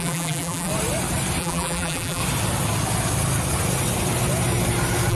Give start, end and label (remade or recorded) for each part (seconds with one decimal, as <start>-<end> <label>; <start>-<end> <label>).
0.0-0.7 remade; 0.7-1.4 recorded; 1.4-2.2 remade; 2.2-5.1 recorded